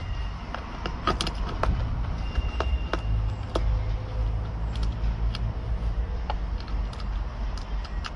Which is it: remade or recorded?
recorded